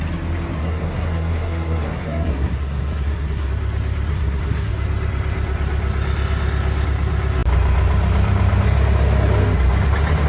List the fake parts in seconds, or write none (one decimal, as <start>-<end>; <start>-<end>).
0.6-3.5; 4.1-4.7